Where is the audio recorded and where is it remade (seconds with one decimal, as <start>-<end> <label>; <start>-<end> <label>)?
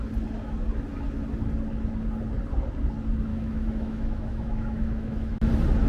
0.0-3.3 recorded; 3.3-5.5 remade; 5.5-5.9 recorded